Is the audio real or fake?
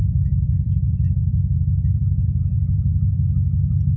fake